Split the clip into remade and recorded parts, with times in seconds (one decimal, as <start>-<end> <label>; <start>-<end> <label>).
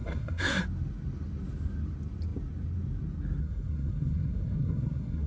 0.0-0.6 remade; 0.6-3.4 recorded; 3.4-5.3 remade